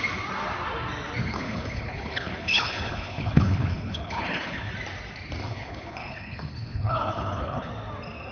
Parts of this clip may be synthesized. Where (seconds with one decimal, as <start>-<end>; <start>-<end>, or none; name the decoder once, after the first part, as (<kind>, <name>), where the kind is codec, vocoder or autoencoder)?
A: 1.2-4.7 (codec, HILCodec); 5.4-7.7